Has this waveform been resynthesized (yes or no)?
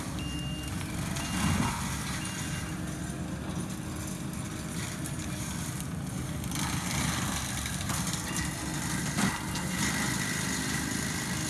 no